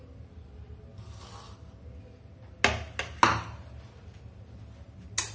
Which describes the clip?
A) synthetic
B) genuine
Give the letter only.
B